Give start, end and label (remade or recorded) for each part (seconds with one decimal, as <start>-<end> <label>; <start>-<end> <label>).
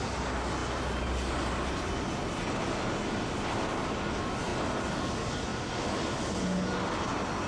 0.0-7.5 recorded